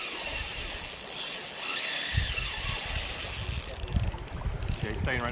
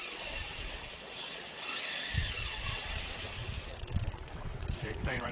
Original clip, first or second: first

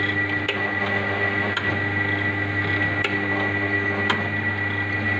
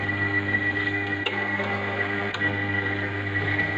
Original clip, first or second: first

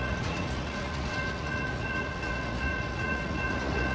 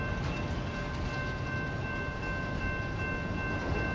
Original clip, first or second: second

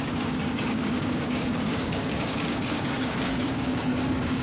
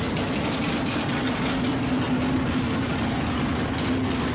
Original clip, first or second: second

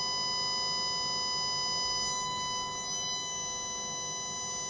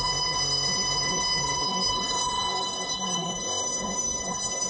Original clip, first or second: first